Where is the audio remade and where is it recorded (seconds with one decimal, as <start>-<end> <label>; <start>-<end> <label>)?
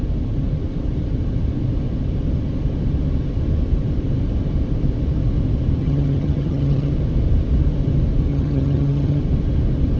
0.0-5.8 recorded; 5.8-6.9 remade; 6.9-8.3 recorded; 8.3-9.2 remade; 9.2-10.0 recorded